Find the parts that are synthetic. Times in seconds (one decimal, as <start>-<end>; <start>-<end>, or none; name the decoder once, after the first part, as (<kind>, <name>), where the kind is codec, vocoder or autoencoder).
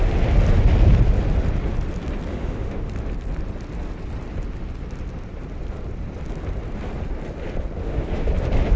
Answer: 2.3-2.9 (autoencoder, DAC-VAE); 7.8-8.3